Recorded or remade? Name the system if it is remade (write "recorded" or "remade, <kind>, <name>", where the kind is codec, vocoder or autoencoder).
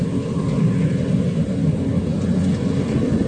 recorded